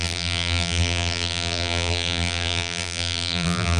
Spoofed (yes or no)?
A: yes